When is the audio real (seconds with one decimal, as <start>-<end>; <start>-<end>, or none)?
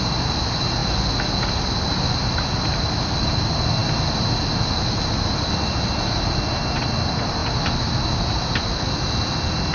0.0-9.7